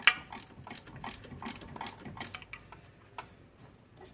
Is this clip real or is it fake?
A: real